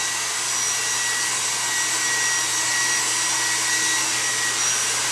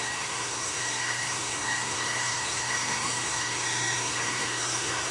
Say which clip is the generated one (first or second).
second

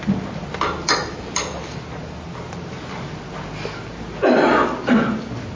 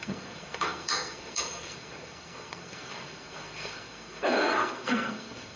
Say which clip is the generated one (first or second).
second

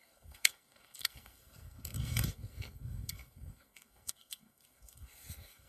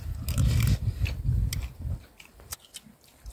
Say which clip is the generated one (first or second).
first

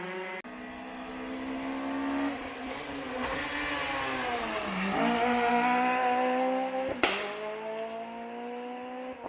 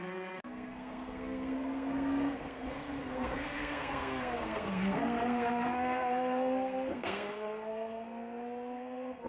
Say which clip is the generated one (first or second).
second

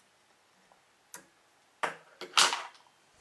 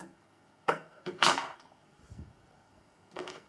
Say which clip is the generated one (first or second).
second